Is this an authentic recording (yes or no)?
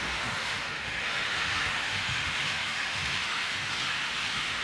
no